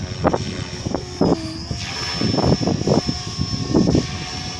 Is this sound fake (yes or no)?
no